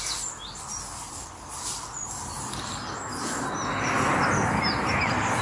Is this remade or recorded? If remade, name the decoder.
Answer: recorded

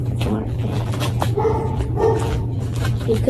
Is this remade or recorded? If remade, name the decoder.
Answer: remade, vocoder, BigVGAN v2